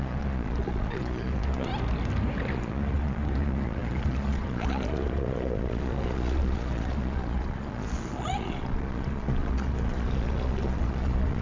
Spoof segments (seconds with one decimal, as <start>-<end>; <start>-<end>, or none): 0.0-1.7; 2.5-11.4